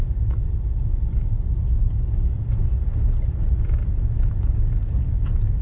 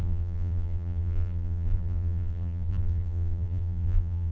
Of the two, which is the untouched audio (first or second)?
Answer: first